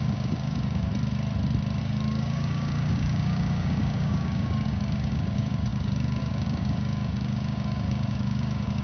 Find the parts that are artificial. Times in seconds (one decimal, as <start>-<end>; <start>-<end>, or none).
0.0-0.9; 1.8-8.8